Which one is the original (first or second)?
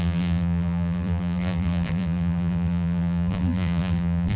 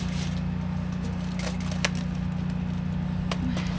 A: second